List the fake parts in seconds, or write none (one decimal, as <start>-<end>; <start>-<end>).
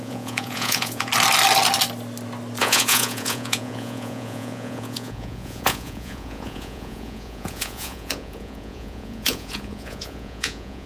0.0-1.1; 2.6-10.9